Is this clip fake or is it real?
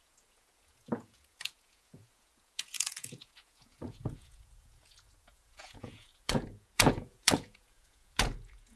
fake